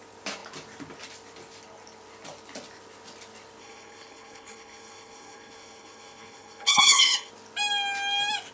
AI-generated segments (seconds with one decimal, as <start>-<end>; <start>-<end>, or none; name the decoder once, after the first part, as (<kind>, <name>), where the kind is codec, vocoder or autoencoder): 3.6-7.3 (codec, HILCodec)